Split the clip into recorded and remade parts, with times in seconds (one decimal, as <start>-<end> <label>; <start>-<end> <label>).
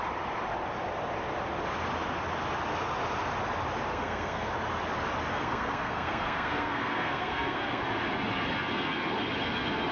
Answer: 0.0-3.9 recorded; 3.9-4.5 remade; 4.5-5.3 recorded; 5.3-7.8 remade; 7.8-9.9 recorded